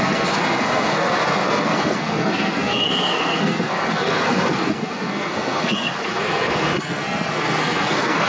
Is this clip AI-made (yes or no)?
yes